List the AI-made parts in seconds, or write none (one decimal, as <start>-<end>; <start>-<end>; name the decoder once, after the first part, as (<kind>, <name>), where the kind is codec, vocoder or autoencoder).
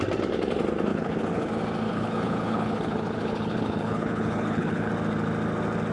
0.9-1.5 (codec, HILCodec); 1.9-4.9